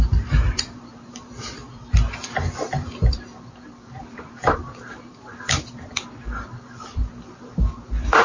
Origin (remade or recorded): remade